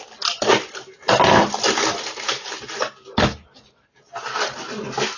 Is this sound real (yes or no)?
yes